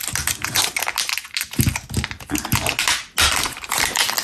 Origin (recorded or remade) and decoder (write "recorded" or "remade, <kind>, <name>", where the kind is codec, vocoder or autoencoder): recorded